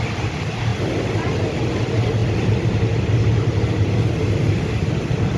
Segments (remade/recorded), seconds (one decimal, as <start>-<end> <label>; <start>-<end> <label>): 0.0-5.4 recorded